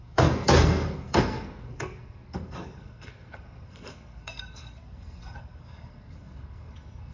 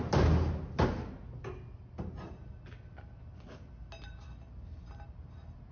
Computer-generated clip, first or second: first